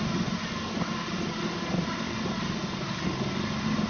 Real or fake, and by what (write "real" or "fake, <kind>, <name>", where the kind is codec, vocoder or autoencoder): real